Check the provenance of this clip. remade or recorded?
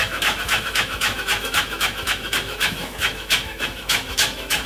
remade